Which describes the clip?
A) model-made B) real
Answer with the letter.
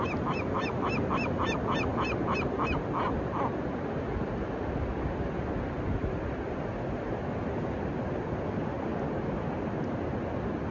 B